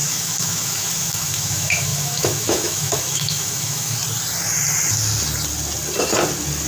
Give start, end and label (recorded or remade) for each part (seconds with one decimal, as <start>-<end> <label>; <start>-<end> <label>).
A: 0.0-4.0 remade; 4.0-6.7 recorded